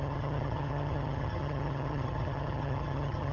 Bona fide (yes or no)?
no